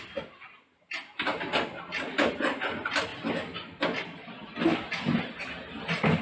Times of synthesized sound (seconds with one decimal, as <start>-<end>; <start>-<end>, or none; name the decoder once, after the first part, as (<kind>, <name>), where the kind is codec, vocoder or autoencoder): none